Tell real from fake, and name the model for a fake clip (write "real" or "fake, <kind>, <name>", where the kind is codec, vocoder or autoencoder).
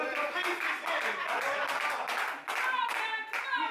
real